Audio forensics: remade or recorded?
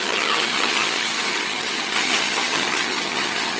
remade